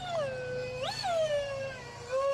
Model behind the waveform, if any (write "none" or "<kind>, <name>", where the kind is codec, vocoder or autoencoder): none